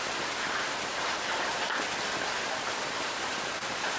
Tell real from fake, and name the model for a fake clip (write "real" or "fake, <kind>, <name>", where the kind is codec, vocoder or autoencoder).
real